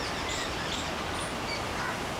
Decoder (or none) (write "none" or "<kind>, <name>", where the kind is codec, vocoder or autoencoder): none